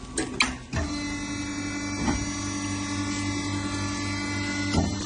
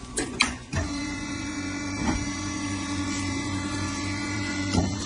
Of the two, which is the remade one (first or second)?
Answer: second